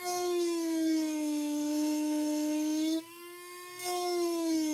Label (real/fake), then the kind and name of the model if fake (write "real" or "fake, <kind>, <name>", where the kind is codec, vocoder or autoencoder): fake, codec, SNAC